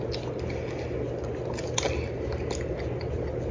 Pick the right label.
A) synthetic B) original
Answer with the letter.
B